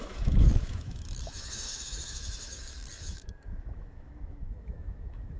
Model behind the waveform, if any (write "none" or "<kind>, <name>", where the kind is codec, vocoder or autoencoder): autoencoder, DAC-VAE